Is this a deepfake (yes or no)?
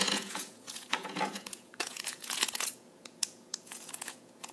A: yes